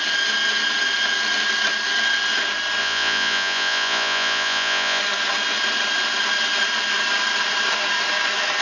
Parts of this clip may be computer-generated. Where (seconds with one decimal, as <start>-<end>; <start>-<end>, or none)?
2.8-5.0